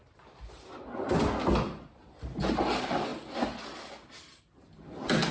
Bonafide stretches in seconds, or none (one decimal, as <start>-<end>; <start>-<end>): 0.0-5.3